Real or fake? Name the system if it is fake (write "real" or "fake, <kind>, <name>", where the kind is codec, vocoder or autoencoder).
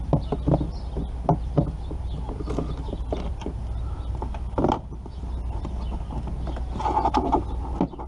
real